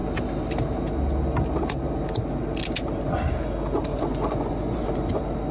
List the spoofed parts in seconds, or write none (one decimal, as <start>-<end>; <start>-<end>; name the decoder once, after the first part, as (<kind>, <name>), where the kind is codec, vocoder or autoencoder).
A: 3.9-5.1 (vocoder, Vocos)